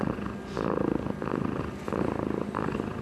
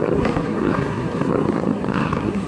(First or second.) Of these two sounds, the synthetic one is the second